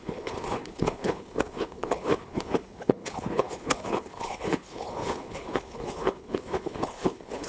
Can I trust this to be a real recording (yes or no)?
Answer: no